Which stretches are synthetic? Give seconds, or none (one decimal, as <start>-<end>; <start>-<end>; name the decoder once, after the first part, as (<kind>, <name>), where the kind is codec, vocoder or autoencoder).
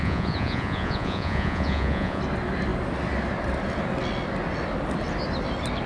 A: 0.0-2.2 (vocoder, Vocos)